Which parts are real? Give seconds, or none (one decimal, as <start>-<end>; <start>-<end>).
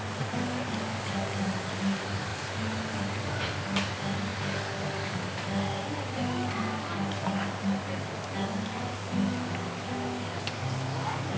none